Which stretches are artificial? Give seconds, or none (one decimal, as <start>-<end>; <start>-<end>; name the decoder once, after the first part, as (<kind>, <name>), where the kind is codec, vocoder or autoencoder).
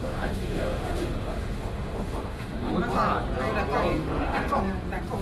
0.0-2.7 (autoencoder, DAC-VAE); 4.0-4.6